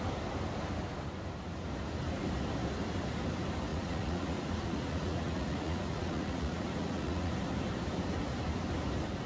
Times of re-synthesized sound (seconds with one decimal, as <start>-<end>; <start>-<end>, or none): 3.7-7.3